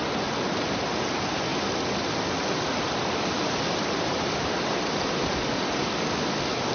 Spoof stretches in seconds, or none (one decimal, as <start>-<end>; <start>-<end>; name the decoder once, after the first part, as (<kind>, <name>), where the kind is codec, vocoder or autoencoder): none